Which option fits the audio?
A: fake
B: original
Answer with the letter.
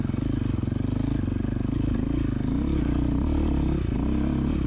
B